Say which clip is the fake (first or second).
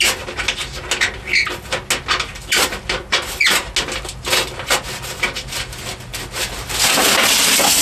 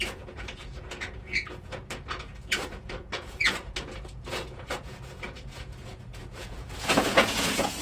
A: second